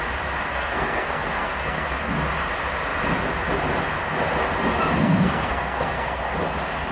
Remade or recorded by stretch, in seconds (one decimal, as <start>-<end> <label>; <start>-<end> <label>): 0.0-0.4 recorded; 0.4-2.0 remade; 2.0-5.0 recorded; 5.0-6.2 remade; 6.2-6.9 recorded